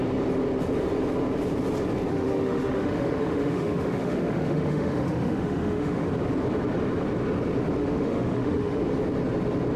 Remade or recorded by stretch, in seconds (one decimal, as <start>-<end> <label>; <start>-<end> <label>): 0.0-2.1 recorded; 2.1-6.1 remade; 6.1-7.8 recorded; 7.8-8.8 remade; 8.8-9.8 recorded